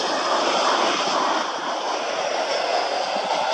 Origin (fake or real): real